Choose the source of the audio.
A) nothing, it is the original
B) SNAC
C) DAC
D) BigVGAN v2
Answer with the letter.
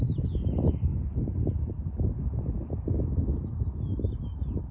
A